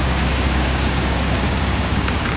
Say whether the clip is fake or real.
fake